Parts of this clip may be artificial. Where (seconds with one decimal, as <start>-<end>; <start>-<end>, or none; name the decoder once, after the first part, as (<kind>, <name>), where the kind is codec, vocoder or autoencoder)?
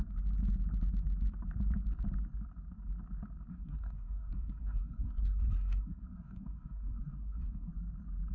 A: 3.5-7.7 (codec, SNAC)